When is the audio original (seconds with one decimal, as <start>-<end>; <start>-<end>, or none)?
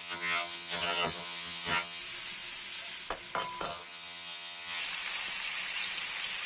2.0-3.7; 4.8-6.5